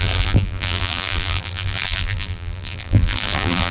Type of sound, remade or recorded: remade